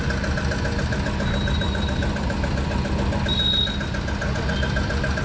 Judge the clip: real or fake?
real